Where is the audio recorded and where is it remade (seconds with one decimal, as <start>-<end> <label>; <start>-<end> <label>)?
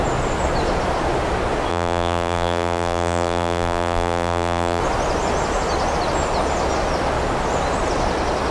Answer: 0.0-1.7 recorded; 1.7-4.8 remade; 4.8-8.5 recorded